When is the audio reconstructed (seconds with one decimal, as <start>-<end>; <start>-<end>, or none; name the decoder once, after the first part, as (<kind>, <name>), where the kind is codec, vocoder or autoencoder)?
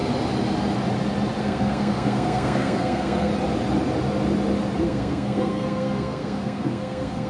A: 1.4-3.3 (codec, SNAC); 4.8-7.3